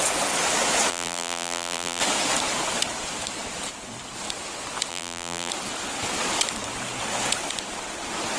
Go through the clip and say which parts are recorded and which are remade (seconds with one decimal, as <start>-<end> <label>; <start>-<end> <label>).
0.0-0.9 recorded; 0.9-2.0 remade; 2.0-4.9 recorded; 4.9-5.5 remade; 5.5-8.4 recorded